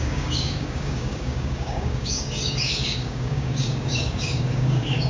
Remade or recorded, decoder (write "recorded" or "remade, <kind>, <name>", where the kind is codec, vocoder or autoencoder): remade, codec, DAC